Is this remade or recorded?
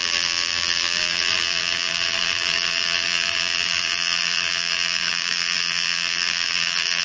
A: remade